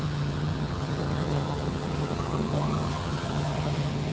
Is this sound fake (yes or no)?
yes